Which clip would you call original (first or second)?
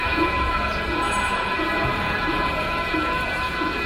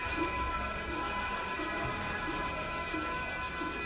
second